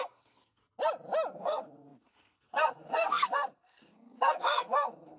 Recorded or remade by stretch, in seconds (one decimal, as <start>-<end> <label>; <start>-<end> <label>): 0.0-0.6 remade; 0.6-1.3 recorded; 1.3-5.2 remade

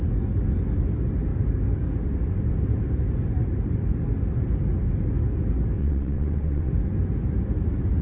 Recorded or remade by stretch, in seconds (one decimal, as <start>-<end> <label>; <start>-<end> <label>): 0.0-5.8 recorded; 5.8-6.7 remade; 6.7-8.0 recorded